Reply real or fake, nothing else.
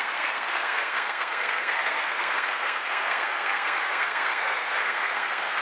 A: fake